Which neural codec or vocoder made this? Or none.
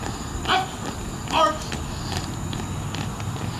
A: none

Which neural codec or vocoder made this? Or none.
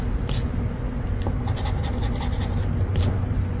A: none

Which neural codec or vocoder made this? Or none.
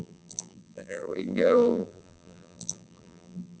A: vocoder, BigVGAN v2